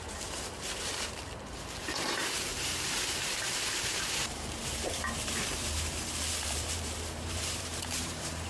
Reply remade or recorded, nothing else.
remade